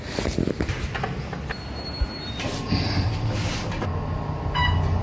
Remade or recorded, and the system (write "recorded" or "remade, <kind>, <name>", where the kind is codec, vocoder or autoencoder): recorded